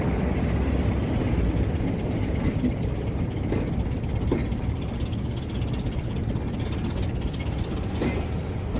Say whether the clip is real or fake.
real